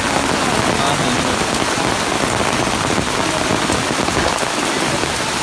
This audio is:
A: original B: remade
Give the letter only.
A